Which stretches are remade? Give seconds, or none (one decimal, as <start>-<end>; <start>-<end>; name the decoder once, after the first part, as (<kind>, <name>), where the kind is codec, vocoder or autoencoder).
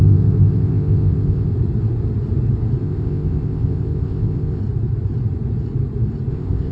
0.0-1.5 (codec, ZipCodec); 2.8-4.6; 6.3-6.7